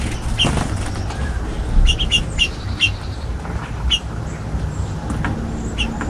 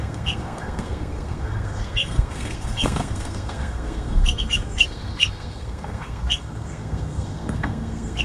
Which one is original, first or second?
first